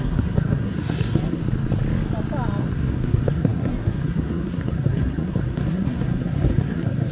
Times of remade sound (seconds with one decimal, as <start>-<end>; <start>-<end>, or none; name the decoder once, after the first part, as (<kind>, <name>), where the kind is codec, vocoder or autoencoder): 0.0-1.4 (codec, SNAC); 2.6-7.1